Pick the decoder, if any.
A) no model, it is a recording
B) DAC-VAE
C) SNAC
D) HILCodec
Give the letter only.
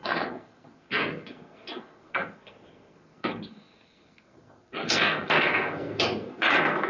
C